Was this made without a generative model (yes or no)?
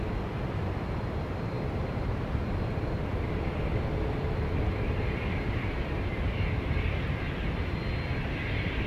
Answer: yes